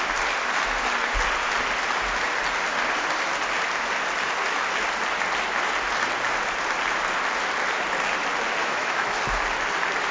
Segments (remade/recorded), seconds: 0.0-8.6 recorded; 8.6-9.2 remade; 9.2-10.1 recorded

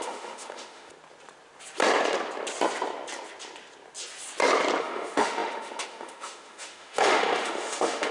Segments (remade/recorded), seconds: 0.0-0.9 remade; 0.9-4.8 recorded; 4.8-8.1 remade

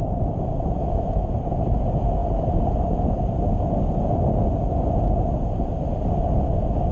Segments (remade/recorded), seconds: 0.0-0.8 recorded; 0.8-1.3 remade; 1.3-6.9 recorded

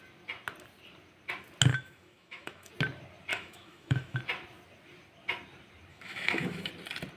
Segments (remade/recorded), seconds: 0.0-1.7 recorded; 1.7-2.7 remade; 2.7-3.3 recorded; 3.3-4.2 remade; 4.2-5.9 recorded; 5.9-6.7 remade; 6.7-7.2 recorded